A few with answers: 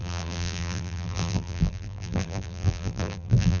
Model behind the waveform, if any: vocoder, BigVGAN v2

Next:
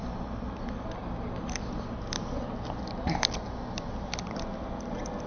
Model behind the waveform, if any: none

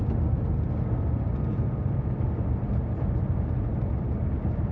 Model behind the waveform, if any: none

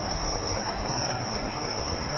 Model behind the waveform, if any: codec, SNAC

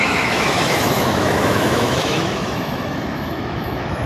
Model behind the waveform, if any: autoencoder, DAC-VAE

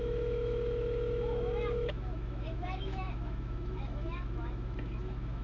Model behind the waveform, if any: autoencoder, DAC-VAE